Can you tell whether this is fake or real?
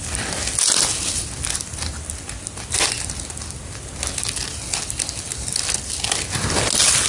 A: real